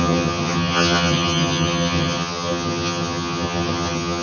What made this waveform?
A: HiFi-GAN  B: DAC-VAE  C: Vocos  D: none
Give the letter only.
A